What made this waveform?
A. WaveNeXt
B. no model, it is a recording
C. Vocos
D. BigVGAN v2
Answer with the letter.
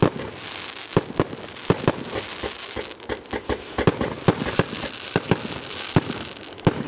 B